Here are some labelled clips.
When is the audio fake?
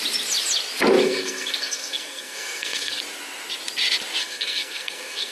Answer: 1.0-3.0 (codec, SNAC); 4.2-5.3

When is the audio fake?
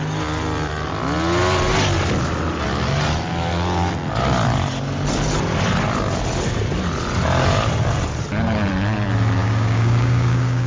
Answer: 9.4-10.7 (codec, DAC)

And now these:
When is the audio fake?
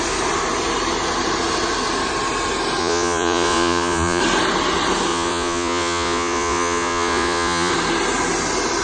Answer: 2.8-4.2 (vocoder, Vocos); 5.1-7.7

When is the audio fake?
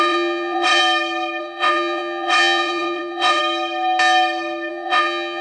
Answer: 0.0-0.8 (vocoder, WaveNeXt); 1.4-3.4; 4.7-5.4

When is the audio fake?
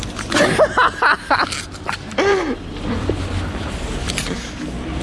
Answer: 1.1-4.1 (vocoder, BigVGAN v2)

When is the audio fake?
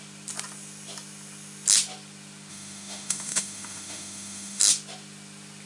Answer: 2.5-4.6 (autoencoder, DAC-VAE)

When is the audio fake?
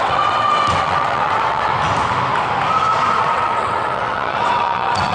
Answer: 0.0-1.7 (vocoder, WaveNeXt); 3.2-5.1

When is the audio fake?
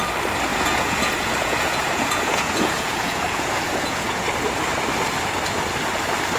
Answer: 0.5-4.3 (vocoder, Vocos)